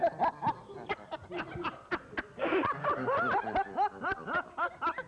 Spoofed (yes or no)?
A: no